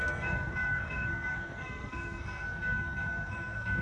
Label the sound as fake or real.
fake